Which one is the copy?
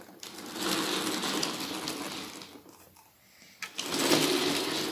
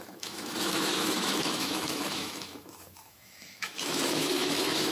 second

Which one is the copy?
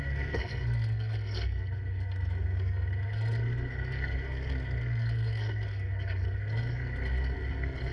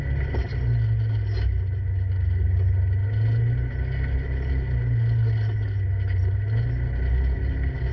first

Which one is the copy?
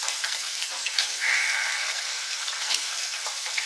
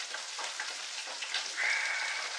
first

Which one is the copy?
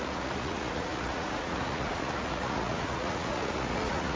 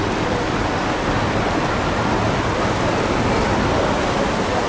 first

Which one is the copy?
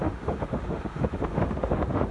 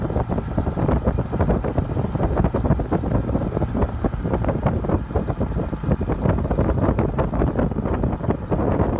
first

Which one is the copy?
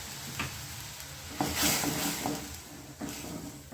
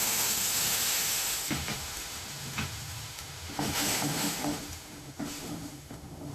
second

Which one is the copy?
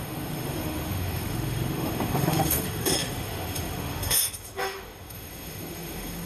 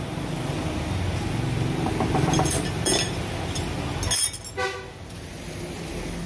first